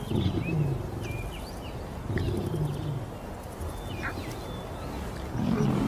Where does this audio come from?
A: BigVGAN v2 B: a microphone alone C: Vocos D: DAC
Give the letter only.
B